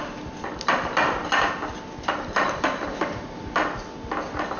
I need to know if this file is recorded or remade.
recorded